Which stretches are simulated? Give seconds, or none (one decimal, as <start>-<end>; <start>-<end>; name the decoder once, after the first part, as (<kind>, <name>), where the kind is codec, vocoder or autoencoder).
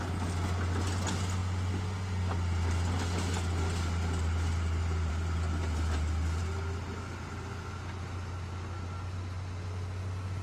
none